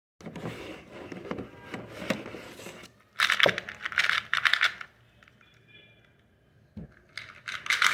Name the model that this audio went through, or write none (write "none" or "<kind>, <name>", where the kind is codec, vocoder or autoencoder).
none